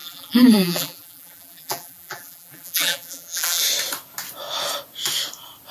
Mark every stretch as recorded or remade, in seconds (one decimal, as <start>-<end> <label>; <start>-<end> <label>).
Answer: 0.0-3.6 remade; 3.6-5.7 recorded